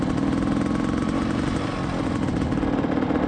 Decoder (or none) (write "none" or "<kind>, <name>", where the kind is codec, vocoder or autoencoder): none